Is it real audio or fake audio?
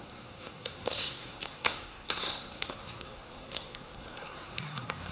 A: fake